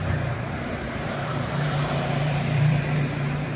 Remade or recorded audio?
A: remade